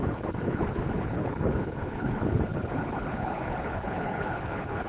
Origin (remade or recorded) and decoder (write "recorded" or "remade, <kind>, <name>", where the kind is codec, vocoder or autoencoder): remade, codec, HILCodec